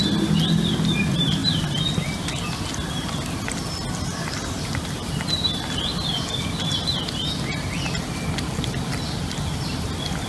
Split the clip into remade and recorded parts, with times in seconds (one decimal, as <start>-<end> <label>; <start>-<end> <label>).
0.0-10.3 recorded